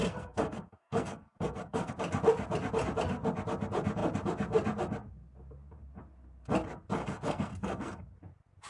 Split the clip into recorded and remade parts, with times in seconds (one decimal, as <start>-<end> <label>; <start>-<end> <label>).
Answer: 0.0-1.9 remade; 1.9-7.0 recorded; 7.0-8.0 remade; 8.0-8.7 recorded